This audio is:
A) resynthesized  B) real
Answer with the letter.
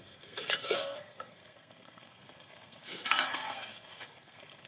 A